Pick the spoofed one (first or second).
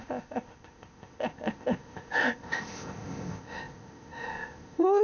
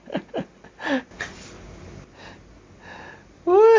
first